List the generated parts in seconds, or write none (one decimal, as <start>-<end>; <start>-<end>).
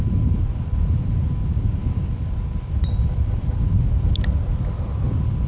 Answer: none